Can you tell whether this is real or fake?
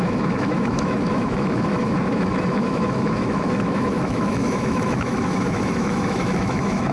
fake